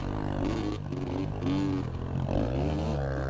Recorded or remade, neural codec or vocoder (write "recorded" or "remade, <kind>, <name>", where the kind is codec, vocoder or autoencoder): recorded